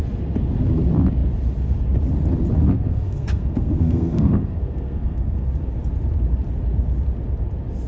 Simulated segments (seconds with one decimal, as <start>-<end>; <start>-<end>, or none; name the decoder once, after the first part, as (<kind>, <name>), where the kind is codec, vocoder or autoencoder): 2.6-5.5 (codec, SNAC)